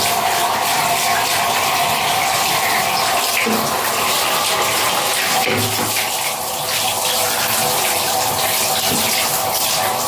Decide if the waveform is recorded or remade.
recorded